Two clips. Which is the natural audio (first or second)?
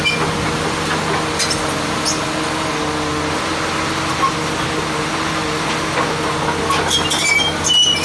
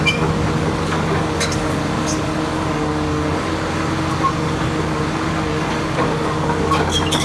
first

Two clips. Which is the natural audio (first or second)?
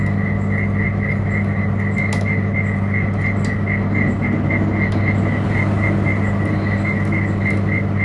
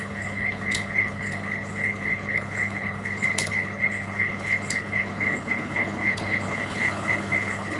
first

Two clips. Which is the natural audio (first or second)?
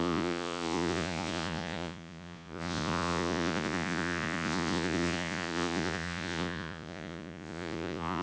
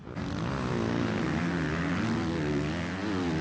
second